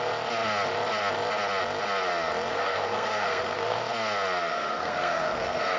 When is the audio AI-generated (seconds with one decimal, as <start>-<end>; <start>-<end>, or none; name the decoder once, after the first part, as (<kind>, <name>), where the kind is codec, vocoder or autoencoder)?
2.5-3.8 (codec, SNAC); 4.5-5.8